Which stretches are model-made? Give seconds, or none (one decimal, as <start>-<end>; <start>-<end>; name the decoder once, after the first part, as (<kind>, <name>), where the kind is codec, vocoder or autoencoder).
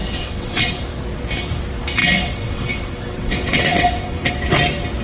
0.0-0.7 (vocoder, WaveNeXt); 2.0-4.3